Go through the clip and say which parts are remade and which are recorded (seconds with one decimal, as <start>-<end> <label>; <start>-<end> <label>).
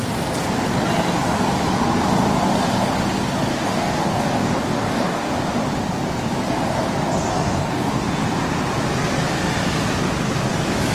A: 0.0-3.5 recorded; 3.5-5.3 remade; 5.3-7.3 recorded; 7.3-7.9 remade; 7.9-10.9 recorded